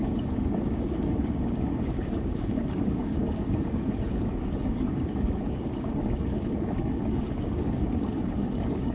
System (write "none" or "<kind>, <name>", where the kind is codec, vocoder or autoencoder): codec, DAC